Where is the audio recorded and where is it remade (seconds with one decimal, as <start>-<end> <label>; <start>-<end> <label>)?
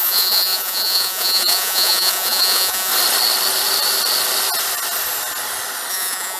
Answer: 0.0-2.9 remade; 2.9-5.9 recorded; 5.9-6.4 remade